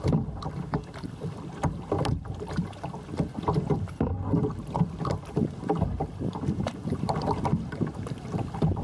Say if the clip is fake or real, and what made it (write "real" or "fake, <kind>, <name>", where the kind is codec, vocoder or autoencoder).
real